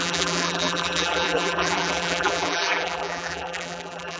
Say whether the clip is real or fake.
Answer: fake